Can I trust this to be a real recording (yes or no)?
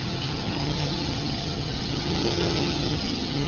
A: no